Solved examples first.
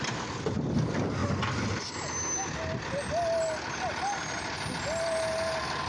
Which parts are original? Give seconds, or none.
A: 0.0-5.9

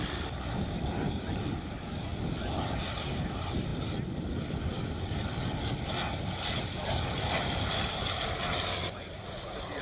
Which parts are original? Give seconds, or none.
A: 2.1-2.8

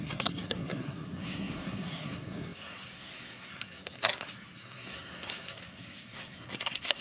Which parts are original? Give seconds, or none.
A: none

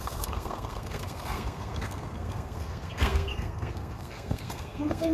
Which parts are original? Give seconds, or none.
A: none

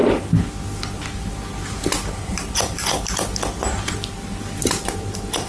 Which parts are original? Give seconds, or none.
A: 0.0-5.5

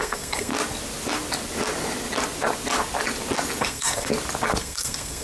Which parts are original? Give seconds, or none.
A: 0.5-3.6; 4.1-4.6

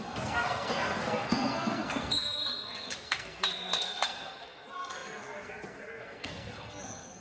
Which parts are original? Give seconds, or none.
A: none